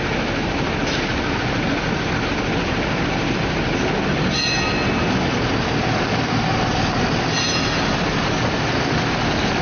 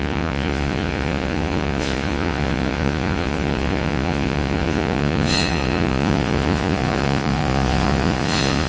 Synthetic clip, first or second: second